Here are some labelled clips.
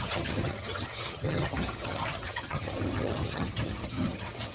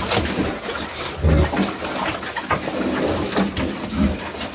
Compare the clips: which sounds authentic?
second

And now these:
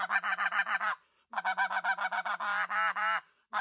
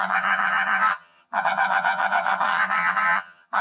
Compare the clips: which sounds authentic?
first